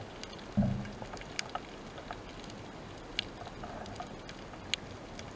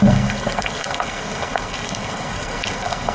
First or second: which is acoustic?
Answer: first